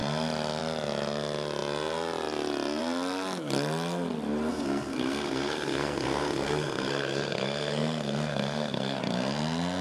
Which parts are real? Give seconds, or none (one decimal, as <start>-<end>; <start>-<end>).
0.0-4.5; 9.0-9.8